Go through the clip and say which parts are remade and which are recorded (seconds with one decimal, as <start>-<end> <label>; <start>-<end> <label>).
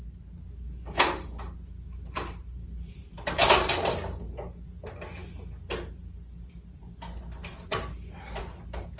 0.0-2.4 recorded; 2.4-3.7 remade; 3.7-9.0 recorded